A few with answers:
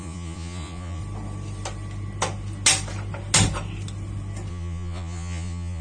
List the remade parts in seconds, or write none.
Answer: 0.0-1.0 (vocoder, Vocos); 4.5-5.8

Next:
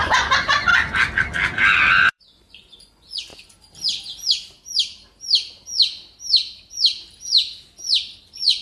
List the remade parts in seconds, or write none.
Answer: 0.0-0.7 (vocoder, Vocos); 1.9-3.3; 8.2-8.6

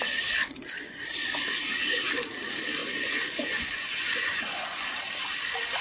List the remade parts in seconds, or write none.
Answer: 0.4-1.1 (vocoder, Vocos); 2.8-4.9

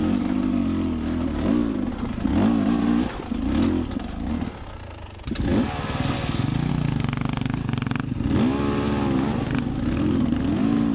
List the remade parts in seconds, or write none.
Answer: none

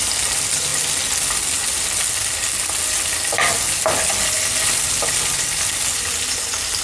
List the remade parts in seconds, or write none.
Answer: none